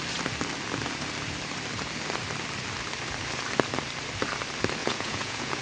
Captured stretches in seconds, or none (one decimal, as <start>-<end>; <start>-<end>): 0.0-4.8